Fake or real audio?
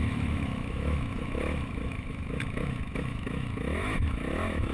fake